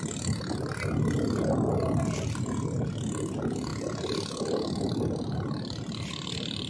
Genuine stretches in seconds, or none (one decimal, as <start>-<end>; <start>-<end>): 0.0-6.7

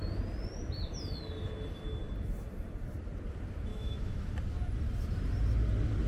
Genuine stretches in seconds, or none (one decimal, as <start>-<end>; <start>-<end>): 0.0-3.7; 4.3-6.1

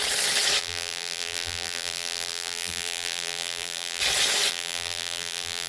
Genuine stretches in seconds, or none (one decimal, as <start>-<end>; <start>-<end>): 0.0-0.6; 4.0-4.5

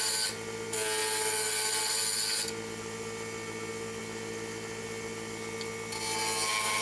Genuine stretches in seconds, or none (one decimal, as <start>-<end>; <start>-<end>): 0.0-6.8

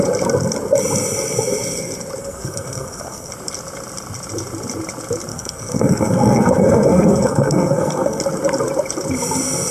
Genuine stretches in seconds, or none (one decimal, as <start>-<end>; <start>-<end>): 0.0-2.2; 3.3-5.3; 8.2-9.7